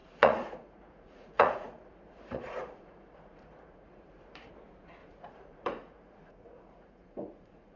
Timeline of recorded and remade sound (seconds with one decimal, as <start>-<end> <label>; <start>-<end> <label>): 0.0-4.5 remade; 4.5-5.0 recorded; 5.0-7.8 remade